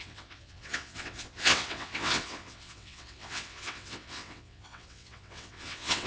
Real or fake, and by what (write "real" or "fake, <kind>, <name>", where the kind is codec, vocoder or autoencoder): fake, vocoder, WaveNeXt